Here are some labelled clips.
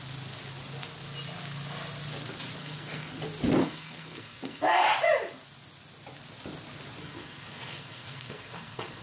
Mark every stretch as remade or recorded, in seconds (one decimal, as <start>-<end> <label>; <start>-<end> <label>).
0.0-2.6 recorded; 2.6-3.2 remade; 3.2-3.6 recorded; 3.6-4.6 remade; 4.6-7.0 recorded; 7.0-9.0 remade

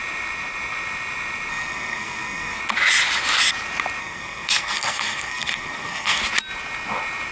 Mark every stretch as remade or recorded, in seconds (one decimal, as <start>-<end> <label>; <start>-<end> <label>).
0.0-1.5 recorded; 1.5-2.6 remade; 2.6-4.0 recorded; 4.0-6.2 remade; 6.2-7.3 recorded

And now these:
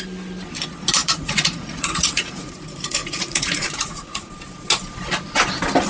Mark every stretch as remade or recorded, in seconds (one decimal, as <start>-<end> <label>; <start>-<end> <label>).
0.0-1.0 recorded; 1.0-4.3 remade; 4.3-5.9 recorded

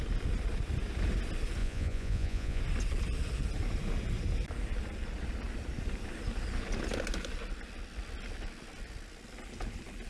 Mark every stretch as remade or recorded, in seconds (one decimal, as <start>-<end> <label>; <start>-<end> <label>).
0.0-1.6 recorded; 1.6-2.6 remade; 2.6-10.1 recorded